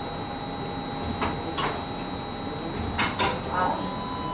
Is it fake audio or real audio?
real